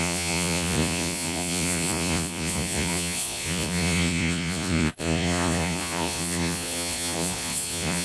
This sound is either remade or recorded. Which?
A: remade